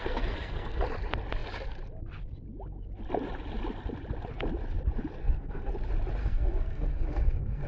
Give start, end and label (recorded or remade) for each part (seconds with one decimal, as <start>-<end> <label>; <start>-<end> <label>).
0.0-0.8 remade; 0.8-5.2 recorded; 5.2-5.7 remade; 5.7-6.2 recorded; 6.2-7.7 remade